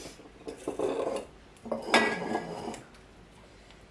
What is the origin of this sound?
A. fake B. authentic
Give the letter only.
B